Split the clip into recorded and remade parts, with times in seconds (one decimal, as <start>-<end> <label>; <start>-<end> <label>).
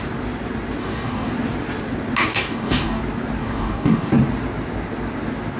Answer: 0.0-0.8 recorded; 0.8-1.3 remade; 1.3-2.3 recorded; 2.3-3.0 remade; 3.0-3.4 recorded; 3.4-4.1 remade; 4.1-5.6 recorded